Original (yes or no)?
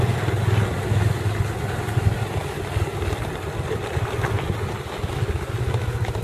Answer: yes